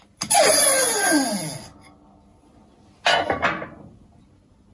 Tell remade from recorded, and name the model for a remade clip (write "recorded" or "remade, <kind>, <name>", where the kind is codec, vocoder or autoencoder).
recorded